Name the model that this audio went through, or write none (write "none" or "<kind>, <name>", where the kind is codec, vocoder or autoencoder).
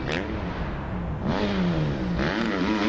none